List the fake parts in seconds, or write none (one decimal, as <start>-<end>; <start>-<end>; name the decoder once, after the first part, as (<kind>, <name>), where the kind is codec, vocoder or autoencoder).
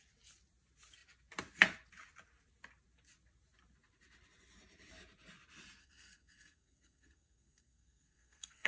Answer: 5.8-8.7 (codec, SNAC)